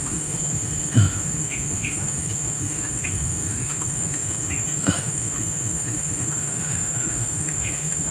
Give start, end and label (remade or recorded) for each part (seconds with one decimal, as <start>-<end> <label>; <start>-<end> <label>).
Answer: 0.0-8.1 remade